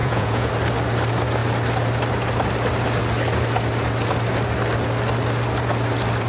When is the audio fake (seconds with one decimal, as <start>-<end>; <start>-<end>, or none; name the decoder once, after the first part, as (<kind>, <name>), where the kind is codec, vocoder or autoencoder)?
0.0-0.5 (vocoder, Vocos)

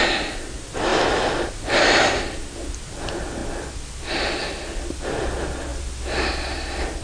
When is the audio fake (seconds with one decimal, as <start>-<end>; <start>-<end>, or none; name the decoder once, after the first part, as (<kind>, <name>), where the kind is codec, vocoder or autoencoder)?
none

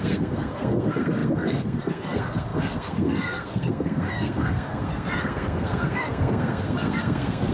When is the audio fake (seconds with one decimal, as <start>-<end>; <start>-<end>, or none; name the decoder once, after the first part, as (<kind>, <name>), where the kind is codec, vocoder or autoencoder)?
0.0-7.5 (codec, SNAC)